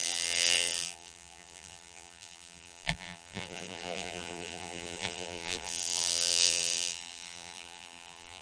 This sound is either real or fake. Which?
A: fake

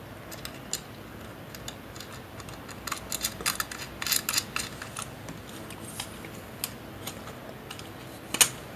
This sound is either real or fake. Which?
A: real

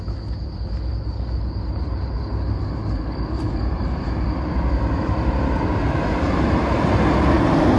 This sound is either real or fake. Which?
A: real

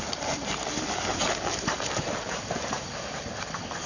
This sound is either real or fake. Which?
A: fake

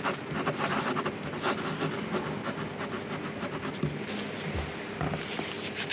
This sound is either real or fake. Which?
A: real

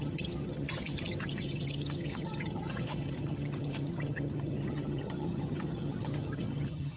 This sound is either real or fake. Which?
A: fake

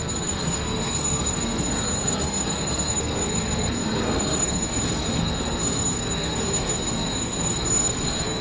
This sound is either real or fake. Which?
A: fake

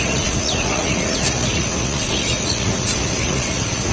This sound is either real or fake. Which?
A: fake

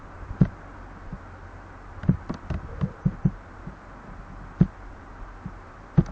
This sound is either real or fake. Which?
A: real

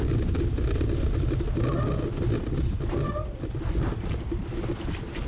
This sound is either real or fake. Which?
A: real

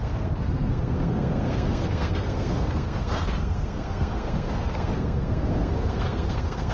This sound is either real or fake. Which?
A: fake